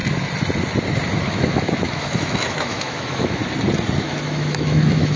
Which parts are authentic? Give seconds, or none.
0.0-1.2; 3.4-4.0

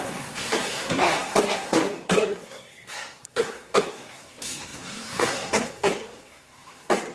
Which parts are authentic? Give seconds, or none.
none

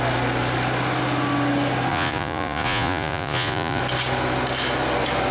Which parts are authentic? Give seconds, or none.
0.0-1.9; 3.8-5.3

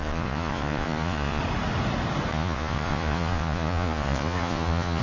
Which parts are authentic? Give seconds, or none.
1.4-2.3

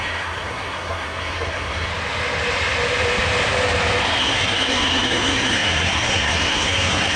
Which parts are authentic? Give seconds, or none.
1.9-4.2

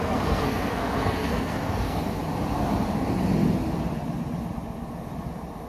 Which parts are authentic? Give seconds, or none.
2.0-5.7

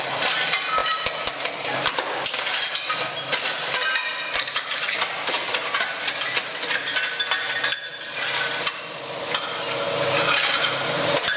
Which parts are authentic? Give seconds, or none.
0.0-11.4

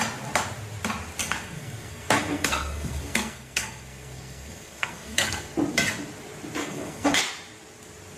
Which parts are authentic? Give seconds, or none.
0.0-1.2; 5.5-6.6; 7.2-8.2